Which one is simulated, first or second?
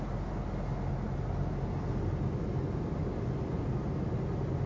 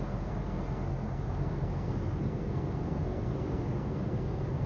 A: second